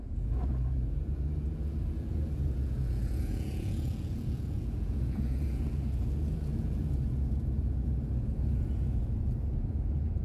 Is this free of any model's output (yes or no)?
no